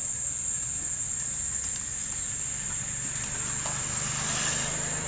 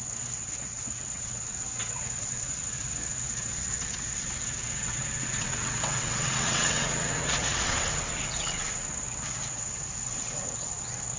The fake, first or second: second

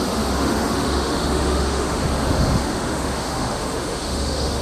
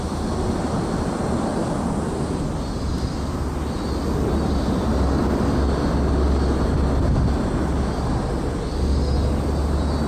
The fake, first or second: first